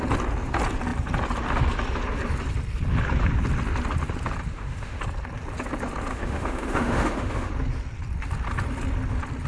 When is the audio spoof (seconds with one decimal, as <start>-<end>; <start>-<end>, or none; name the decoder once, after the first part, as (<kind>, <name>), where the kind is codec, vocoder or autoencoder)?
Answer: 4.5-5.0 (autoencoder, DAC-VAE); 6.1-7.5